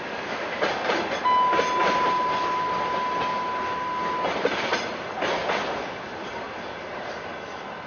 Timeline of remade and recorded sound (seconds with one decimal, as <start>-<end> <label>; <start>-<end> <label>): 0.0-7.9 recorded

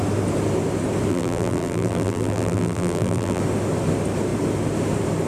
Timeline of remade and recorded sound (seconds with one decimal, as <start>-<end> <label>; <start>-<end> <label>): 0.0-1.1 recorded; 1.1-3.4 remade; 3.4-5.3 recorded

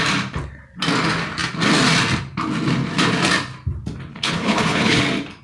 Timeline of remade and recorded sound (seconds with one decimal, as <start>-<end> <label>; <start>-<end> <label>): 0.0-4.1 recorded; 4.1-5.0 remade; 5.0-5.4 recorded

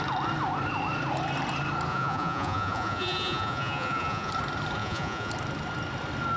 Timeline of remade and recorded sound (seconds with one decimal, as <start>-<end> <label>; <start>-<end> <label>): 0.0-1.9 recorded; 1.9-4.3 remade; 4.3-4.8 recorded; 4.8-5.3 remade; 5.3-6.4 recorded

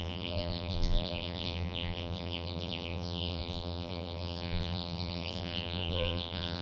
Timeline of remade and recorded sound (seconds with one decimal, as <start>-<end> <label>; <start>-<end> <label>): 0.0-6.6 remade

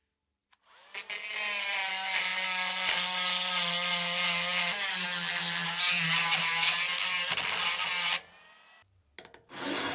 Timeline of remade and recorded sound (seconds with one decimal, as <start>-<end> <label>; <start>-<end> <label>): 0.0-9.9 recorded

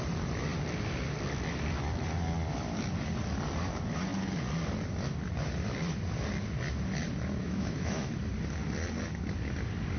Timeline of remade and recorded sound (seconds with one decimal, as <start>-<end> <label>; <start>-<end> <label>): 0.0-7.4 recorded; 7.4-8.2 remade; 8.2-10.0 recorded

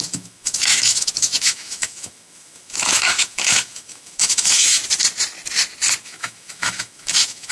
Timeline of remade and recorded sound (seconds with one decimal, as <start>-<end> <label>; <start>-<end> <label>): 0.0-4.8 remade; 4.8-6.0 recorded; 6.0-7.5 remade